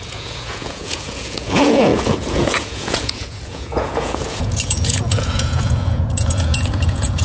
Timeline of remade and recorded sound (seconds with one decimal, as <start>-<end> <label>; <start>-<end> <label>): 0.0-7.2 remade